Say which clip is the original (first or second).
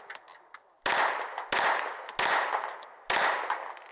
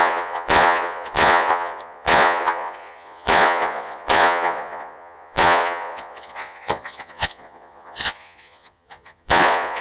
first